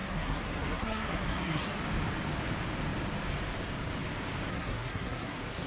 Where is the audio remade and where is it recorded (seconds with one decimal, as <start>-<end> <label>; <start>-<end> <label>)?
0.0-1.8 remade; 1.8-4.5 recorded; 4.5-5.7 remade